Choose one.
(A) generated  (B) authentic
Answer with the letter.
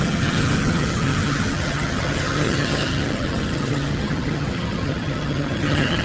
A